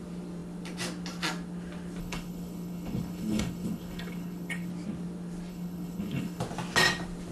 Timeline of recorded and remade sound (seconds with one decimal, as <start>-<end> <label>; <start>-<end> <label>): 0.0-2.0 recorded; 2.0-4.7 remade; 4.7-5.5 recorded; 5.5-6.4 remade; 6.4-7.3 recorded